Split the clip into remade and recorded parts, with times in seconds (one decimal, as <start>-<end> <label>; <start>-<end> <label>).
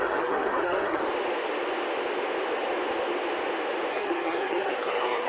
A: 0.0-1.0 remade; 1.0-3.9 recorded; 3.9-5.3 remade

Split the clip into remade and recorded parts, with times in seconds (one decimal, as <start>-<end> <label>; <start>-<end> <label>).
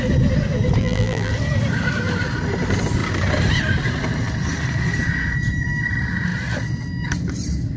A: 0.0-0.8 recorded; 0.8-1.3 remade; 1.3-7.8 recorded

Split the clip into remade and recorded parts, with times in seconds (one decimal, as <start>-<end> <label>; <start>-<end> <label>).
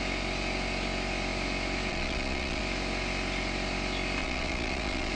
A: 0.0-1.9 recorded; 1.9-2.6 remade; 2.6-4.2 recorded; 4.2-5.1 remade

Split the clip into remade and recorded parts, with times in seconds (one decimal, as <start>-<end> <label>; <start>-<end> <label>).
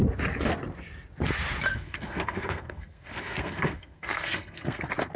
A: 0.0-1.7 recorded; 1.7-4.8 remade; 4.8-5.2 recorded